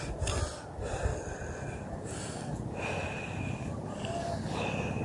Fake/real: real